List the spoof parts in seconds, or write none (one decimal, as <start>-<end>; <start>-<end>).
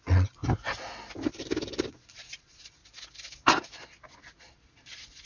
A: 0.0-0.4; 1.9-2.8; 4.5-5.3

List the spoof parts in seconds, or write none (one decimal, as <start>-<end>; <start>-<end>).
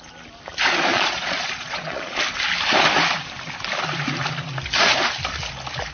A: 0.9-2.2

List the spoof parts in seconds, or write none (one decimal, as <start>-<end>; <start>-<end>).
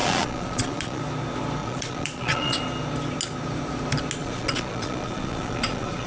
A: 0.0-1.0; 1.6-2.6; 4.2-6.1